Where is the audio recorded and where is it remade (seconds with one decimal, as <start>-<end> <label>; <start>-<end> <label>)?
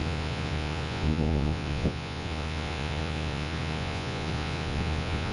0.0-5.3 remade